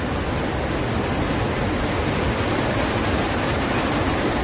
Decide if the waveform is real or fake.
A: real